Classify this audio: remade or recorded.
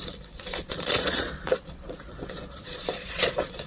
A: remade